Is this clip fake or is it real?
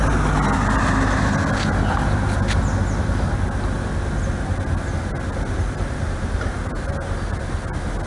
real